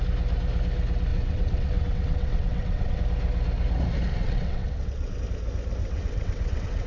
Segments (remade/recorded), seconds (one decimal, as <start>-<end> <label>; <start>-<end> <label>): 0.0-1.1 recorded; 1.1-3.0 remade; 3.0-4.1 recorded; 4.1-5.2 remade; 5.2-5.8 recorded; 5.8-6.9 remade